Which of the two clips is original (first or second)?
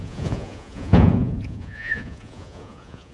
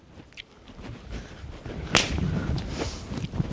second